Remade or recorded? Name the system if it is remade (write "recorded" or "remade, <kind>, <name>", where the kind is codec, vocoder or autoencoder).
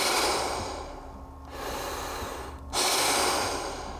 recorded